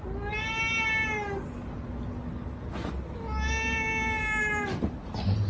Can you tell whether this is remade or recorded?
recorded